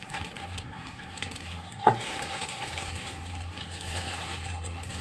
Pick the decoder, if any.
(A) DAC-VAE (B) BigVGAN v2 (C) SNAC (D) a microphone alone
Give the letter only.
C